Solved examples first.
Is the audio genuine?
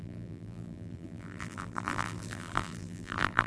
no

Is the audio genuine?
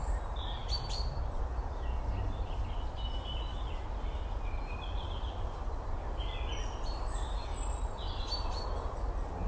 yes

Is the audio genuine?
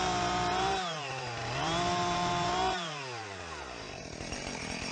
no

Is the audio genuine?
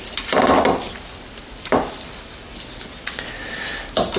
yes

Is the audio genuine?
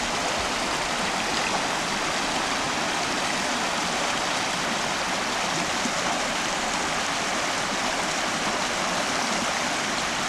yes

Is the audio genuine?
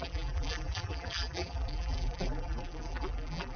no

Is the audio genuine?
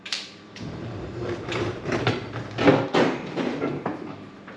no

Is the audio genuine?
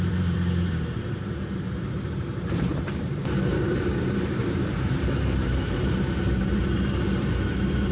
no